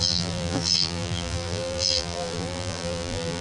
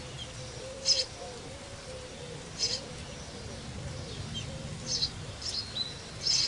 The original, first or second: second